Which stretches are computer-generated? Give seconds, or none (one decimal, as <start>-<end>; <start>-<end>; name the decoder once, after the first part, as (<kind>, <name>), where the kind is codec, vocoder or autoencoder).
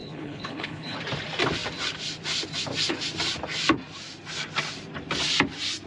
0.0-1.0 (codec, HILCodec)